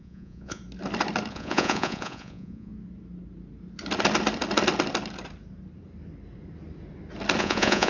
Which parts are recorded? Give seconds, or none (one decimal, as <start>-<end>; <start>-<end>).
0.6-1.3; 2.7-7.4